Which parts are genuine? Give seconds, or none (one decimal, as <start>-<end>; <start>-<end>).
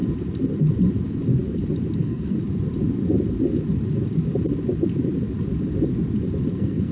0.0-2.0; 2.4-6.5